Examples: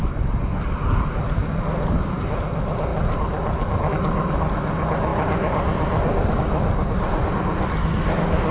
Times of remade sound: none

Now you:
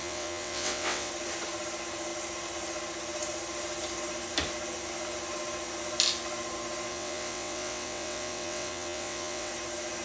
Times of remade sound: 0.0-1.1 (vocoder, WaveNeXt); 6.9-9.5